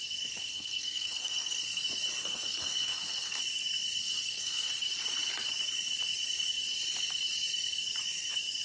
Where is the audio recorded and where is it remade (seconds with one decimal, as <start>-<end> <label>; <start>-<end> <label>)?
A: 0.0-0.5 recorded; 0.5-1.8 remade; 1.8-2.2 recorded; 2.2-3.4 remade; 3.4-4.0 recorded; 4.0-4.7 remade; 4.7-8.6 recorded